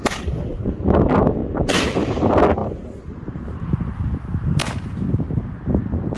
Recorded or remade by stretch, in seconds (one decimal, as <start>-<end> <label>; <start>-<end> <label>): 0.0-1.4 recorded; 1.4-2.1 remade; 2.1-2.6 recorded; 2.6-4.1 remade; 4.1-4.6 recorded; 4.6-5.4 remade; 5.4-6.2 recorded